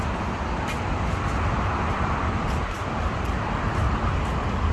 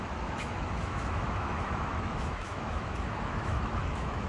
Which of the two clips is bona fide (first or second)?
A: first